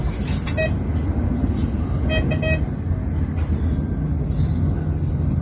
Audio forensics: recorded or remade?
recorded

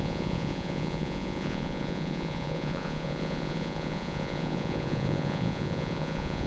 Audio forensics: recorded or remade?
remade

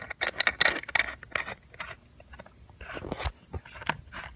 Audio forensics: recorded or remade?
recorded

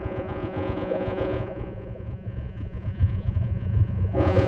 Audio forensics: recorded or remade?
remade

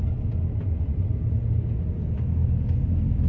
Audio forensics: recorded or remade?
recorded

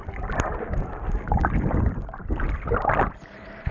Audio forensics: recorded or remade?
recorded